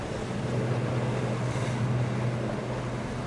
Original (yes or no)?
yes